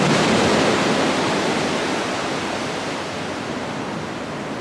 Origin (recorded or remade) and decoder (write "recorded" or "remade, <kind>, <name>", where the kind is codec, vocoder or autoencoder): recorded